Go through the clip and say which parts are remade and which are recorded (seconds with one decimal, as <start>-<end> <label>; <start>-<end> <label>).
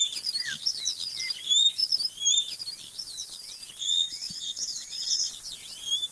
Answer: 0.0-3.8 recorded; 3.8-5.3 remade; 5.3-6.1 recorded